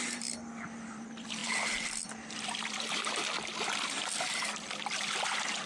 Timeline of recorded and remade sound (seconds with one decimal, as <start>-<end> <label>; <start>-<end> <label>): 0.0-5.7 remade